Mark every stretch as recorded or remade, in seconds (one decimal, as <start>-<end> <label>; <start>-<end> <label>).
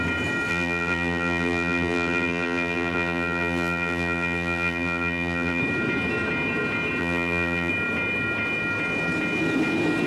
0.0-0.5 recorded; 0.5-5.6 remade; 5.6-7.0 recorded; 7.0-7.7 remade; 7.7-10.1 recorded